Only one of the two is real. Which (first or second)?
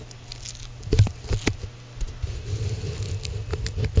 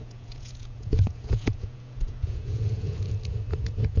first